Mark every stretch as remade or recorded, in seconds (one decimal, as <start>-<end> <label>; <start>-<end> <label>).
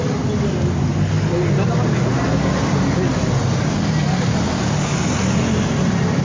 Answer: 0.0-6.2 recorded